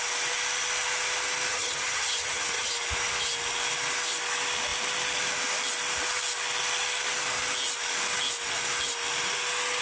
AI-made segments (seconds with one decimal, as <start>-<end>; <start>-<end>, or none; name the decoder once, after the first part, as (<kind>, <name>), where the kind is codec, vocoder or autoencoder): 1.5-2.7 (vocoder, HiFi-GAN)